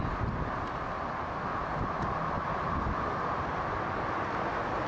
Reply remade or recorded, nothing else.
recorded